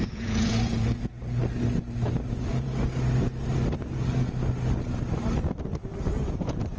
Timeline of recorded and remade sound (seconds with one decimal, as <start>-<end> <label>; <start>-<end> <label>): 0.0-1.4 remade; 1.4-2.3 recorded; 2.3-2.7 remade; 2.7-6.0 recorded; 6.0-6.8 remade